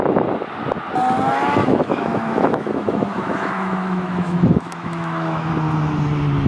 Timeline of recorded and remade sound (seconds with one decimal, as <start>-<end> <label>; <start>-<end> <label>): 0.0-1.6 recorded; 1.6-5.5 remade; 5.5-6.5 recorded